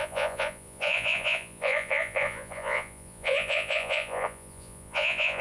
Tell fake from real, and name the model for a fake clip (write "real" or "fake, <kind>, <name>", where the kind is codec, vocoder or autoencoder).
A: fake, vocoder, Vocos